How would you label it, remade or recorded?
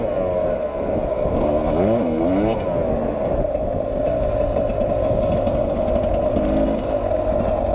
recorded